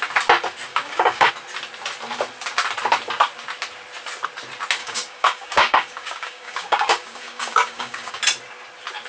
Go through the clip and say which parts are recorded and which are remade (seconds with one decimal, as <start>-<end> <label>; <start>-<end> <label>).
0.0-0.7 recorded; 0.7-1.3 remade; 1.3-4.8 recorded; 4.8-8.2 remade; 8.2-9.1 recorded